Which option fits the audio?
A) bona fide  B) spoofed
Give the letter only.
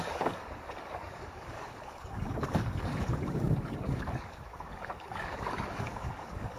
B